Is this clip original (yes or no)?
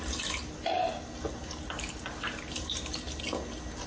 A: yes